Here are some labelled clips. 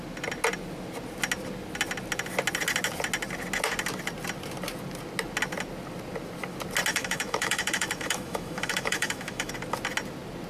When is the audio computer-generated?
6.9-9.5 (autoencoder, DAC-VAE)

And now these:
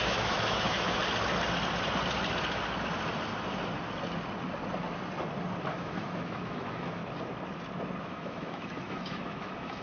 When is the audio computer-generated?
0.0-1.0 (autoencoder, DAC-VAE); 5.7-7.0; 8.0-9.8